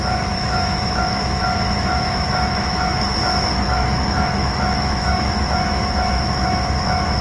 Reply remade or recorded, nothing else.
remade